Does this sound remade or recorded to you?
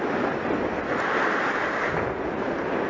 recorded